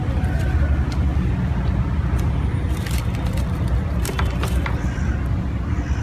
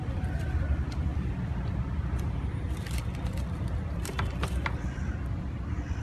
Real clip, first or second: first